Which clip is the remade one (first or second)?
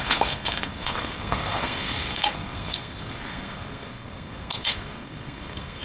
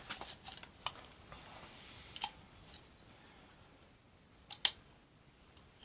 first